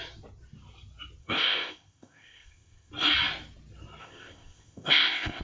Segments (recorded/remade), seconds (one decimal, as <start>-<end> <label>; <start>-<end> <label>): 0.0-1.2 recorded; 1.2-2.9 remade; 2.9-4.0 recorded; 4.0-5.4 remade